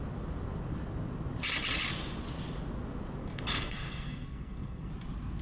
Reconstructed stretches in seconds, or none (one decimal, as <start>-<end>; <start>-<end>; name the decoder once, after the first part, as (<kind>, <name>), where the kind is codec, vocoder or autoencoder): 3.2-4.9 (codec, SNAC)